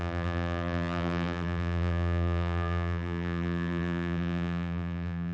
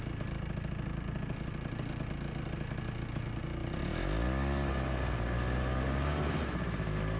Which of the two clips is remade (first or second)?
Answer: first